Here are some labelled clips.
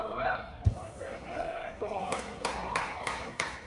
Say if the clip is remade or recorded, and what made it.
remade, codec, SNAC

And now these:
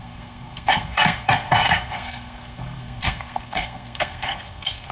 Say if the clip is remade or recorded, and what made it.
remade, codec, SNAC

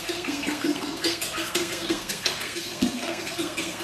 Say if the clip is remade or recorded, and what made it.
remade, codec, SNAC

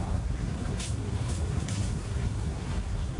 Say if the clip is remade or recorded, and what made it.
remade, codec, SNAC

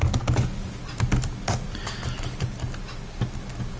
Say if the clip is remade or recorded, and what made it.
recorded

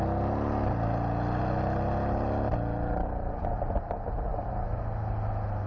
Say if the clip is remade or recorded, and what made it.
recorded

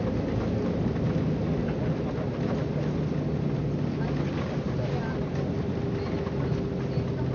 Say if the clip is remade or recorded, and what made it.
recorded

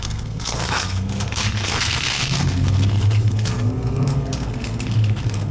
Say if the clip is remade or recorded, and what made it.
remade, codec, SNAC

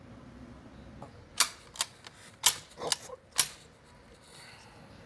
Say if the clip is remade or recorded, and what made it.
recorded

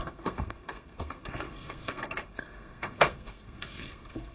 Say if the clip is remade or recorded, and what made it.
remade, codec, SNAC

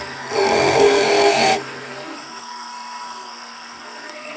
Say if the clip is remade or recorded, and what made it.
remade, codec, SNAC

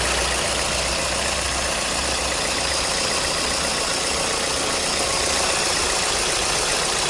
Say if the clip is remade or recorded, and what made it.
recorded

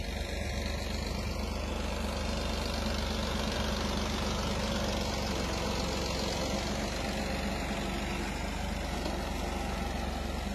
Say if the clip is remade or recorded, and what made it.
recorded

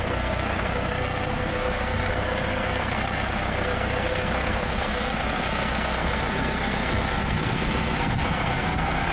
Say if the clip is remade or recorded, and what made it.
remade, codec, SNAC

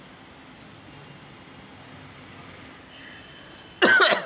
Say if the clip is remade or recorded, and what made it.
recorded